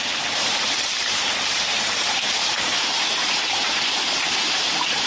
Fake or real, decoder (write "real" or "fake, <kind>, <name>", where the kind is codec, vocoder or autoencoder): fake, vocoder, BigVGAN v2